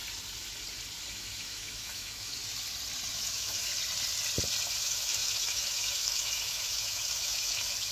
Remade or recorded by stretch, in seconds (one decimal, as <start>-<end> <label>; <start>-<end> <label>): 0.0-1.1 recorded; 1.1-2.4 remade; 2.4-3.1 recorded; 3.1-3.7 remade; 3.7-4.8 recorded; 4.8-7.9 remade